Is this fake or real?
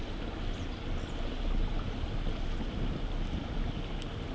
real